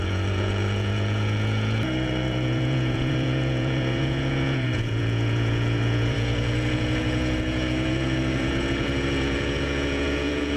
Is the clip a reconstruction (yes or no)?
yes